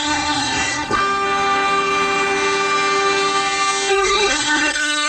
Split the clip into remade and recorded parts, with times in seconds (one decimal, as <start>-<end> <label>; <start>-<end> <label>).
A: 0.0-1.0 remade; 1.0-3.9 recorded; 3.9-5.1 remade